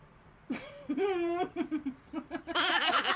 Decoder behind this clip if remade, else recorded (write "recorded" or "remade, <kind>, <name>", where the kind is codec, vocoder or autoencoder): remade, vocoder, BigVGAN v2